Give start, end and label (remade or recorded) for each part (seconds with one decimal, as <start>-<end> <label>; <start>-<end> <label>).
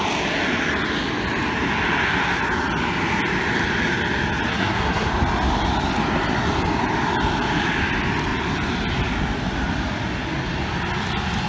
0.0-4.5 recorded; 4.5-5.1 remade; 5.1-11.5 recorded